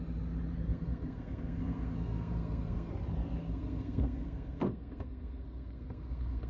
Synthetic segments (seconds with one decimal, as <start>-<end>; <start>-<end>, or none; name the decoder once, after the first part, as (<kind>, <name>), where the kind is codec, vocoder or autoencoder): 0.7-2.9 (codec, SNAC); 3.4-6.5